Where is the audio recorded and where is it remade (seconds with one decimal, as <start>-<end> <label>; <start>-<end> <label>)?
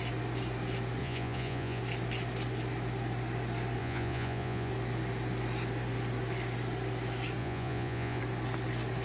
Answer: 0.0-1.0 recorded; 1.0-1.8 remade; 1.8-3.8 recorded; 3.8-4.7 remade; 4.7-7.4 recorded; 7.4-8.2 remade; 8.2-9.0 recorded